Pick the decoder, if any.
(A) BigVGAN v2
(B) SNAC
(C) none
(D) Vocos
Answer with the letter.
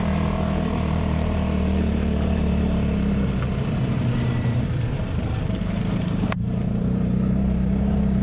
A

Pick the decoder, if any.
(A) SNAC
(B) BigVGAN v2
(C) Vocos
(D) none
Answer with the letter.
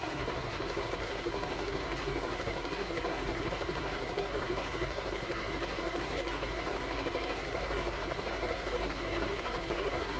A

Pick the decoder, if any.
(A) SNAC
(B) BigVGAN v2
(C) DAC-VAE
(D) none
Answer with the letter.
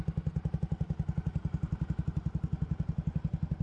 D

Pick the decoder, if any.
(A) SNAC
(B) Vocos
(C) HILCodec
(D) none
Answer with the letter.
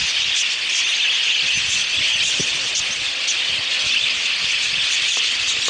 D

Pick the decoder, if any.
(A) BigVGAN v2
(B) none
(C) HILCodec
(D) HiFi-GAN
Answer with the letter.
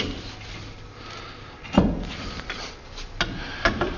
B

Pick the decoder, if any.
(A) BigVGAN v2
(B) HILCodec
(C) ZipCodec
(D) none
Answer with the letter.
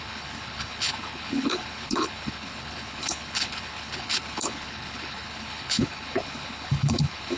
B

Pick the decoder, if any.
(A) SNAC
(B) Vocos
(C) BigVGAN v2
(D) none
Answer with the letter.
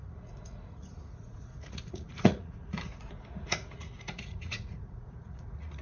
B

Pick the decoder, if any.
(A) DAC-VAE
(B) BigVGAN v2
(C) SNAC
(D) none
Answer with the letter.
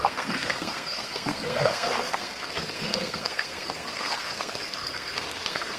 C